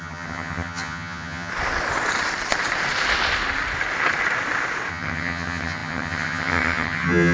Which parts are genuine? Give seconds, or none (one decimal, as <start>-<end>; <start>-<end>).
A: 1.5-4.9